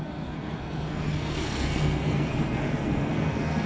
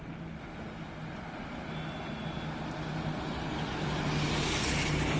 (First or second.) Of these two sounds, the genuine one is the second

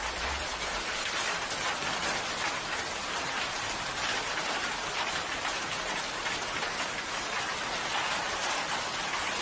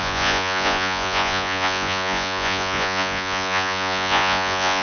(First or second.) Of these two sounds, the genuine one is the first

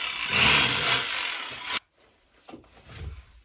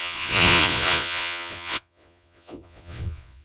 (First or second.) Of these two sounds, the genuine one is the first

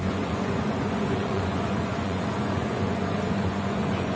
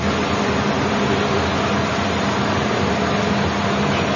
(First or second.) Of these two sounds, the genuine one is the second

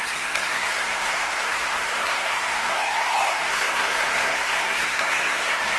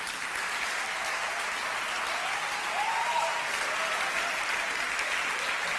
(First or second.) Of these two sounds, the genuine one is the second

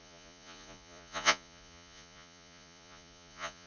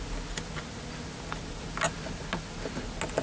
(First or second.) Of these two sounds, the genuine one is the second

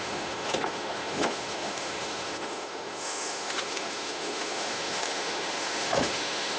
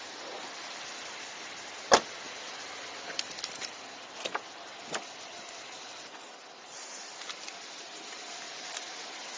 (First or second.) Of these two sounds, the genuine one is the second